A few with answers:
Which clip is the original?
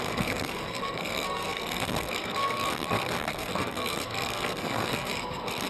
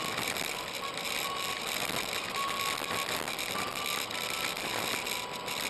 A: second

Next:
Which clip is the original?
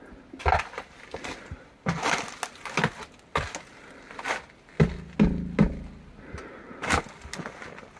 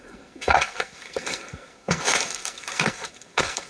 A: first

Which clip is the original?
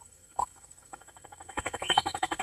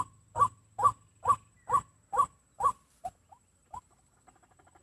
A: second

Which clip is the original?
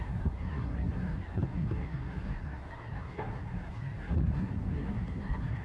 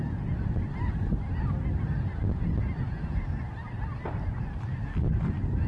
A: second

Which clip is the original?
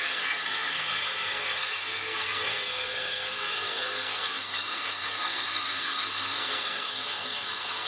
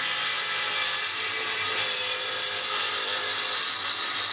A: second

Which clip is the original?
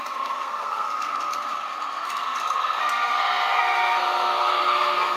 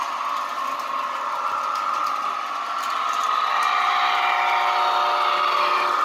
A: second